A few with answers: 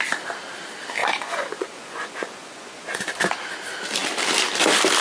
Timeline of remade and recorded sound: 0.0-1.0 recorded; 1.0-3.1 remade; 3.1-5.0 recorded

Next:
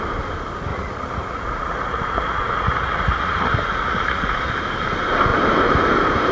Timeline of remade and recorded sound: 0.0-0.7 recorded; 0.7-4.5 remade; 4.5-6.3 recorded

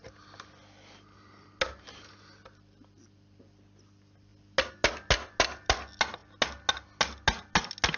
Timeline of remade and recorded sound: 0.0-8.0 recorded

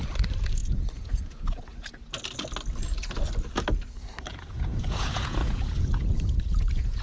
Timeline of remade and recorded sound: 0.0-0.6 recorded; 0.6-1.6 remade; 1.6-4.3 recorded; 4.3-7.0 remade

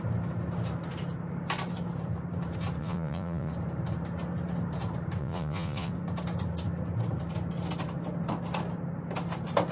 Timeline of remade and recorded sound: 0.0-2.8 recorded; 2.8-3.5 remade; 3.5-5.2 recorded; 5.2-5.9 remade; 5.9-9.7 recorded

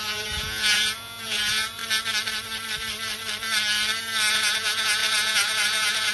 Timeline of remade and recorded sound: 0.0-1.8 remade; 1.8-4.3 recorded; 4.3-6.1 remade